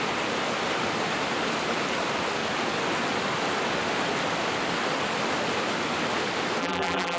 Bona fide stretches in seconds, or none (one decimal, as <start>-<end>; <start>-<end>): 0.0-6.6